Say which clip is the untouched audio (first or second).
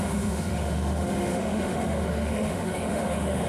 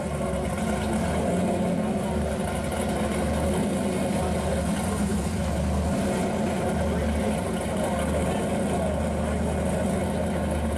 second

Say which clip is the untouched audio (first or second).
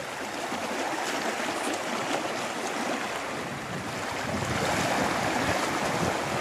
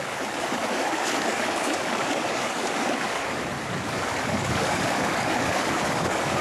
first